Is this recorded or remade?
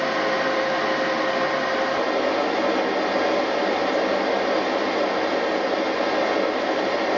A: recorded